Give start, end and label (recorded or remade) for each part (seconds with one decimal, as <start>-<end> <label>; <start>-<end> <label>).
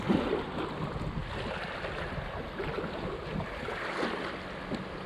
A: 0.0-5.1 recorded